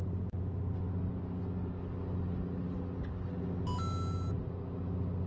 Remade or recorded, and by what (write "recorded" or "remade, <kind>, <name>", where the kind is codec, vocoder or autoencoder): recorded